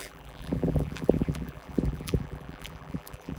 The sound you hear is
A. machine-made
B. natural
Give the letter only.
A